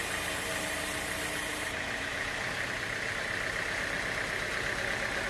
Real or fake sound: real